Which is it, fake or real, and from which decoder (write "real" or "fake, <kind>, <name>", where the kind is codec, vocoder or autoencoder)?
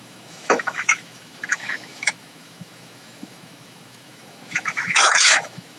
fake, autoencoder, DAC-VAE